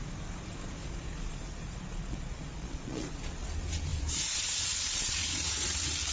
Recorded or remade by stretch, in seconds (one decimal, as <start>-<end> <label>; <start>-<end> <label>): 0.0-1.4 recorded; 1.4-3.2 remade; 3.2-6.1 recorded